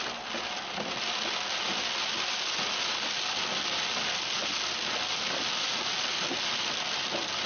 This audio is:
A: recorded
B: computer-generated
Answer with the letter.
A